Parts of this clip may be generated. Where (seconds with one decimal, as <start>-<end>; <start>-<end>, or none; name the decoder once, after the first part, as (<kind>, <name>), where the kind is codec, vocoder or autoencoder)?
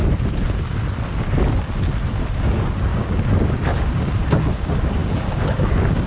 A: 2.3-6.1 (codec, DAC)